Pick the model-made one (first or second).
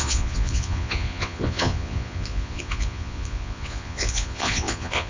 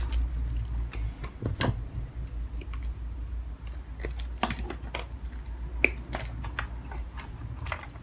first